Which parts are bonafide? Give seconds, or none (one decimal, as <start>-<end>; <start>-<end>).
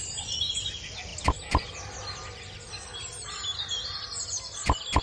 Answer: 0.0-5.0